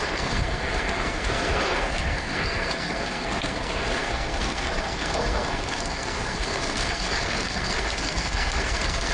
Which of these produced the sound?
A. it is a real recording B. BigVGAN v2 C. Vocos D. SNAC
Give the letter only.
D